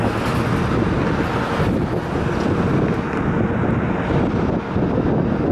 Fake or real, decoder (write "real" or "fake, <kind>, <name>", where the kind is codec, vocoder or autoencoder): real